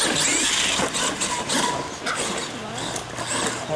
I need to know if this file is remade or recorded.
recorded